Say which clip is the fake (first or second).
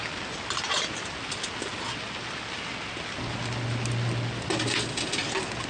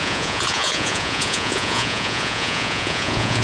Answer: second